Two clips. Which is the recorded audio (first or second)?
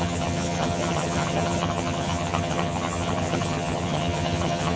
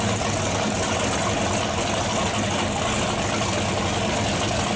second